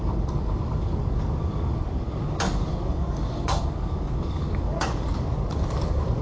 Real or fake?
fake